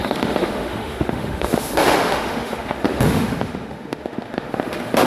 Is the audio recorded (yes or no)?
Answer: no